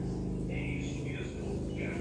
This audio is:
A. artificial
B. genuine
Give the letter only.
B